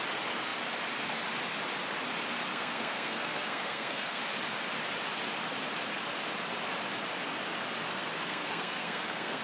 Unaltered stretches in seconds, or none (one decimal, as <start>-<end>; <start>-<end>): 0.0-2.5; 4.2-7.9